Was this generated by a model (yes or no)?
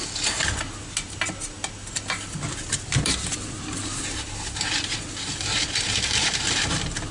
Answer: no